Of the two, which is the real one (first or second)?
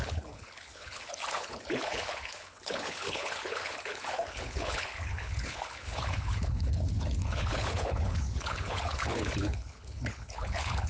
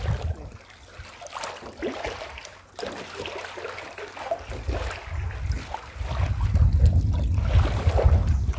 second